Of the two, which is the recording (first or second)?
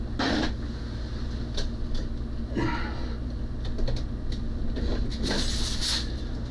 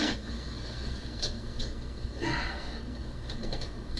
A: first